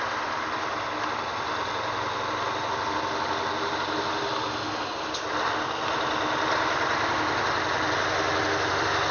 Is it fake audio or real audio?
real